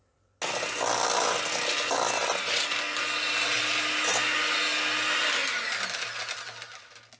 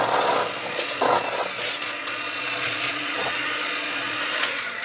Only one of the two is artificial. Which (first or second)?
second